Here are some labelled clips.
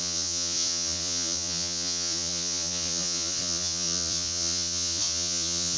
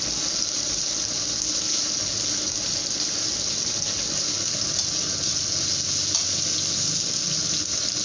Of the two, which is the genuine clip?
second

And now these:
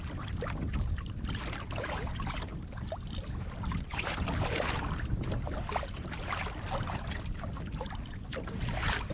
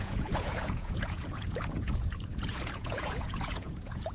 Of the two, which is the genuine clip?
first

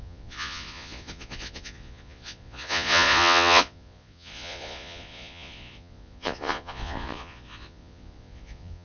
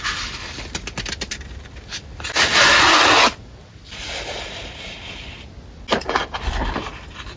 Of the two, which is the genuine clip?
second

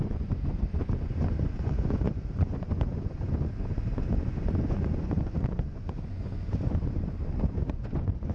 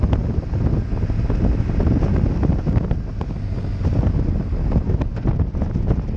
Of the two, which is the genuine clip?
second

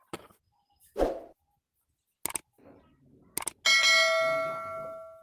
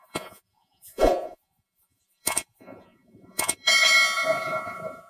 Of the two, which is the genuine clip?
first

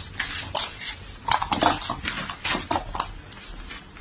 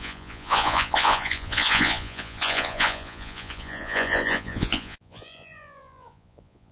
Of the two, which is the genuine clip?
first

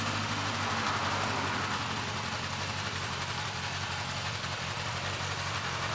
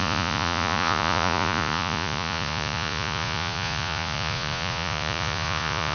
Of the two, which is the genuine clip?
first